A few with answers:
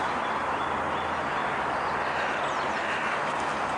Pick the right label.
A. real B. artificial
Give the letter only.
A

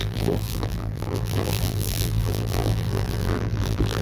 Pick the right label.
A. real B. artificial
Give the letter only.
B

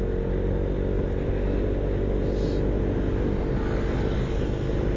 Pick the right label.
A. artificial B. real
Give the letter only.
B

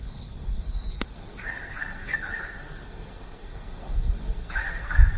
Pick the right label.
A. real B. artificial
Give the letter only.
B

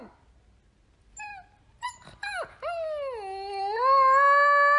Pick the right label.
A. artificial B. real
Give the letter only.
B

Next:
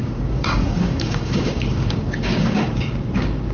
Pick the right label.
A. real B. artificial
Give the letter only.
B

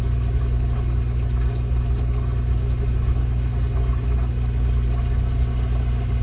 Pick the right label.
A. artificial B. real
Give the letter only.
B